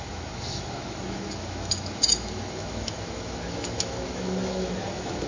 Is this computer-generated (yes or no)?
yes